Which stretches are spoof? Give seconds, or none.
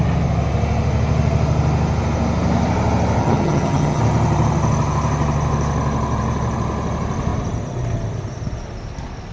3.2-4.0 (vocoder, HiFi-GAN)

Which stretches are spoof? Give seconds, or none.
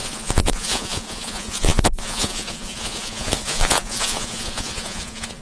0.0-5.4 (vocoder, Vocos)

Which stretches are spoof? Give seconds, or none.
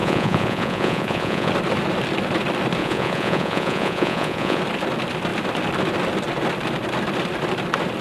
0.0-1.5 (vocoder, Vocos); 2.8-4.6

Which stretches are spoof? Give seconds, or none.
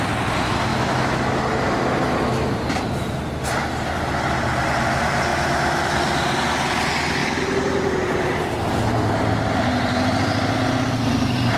0.7-1.4 (autoencoder, DAC-VAE); 5.3-5.8